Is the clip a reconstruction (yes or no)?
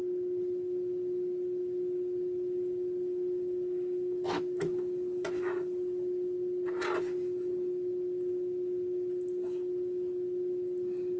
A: no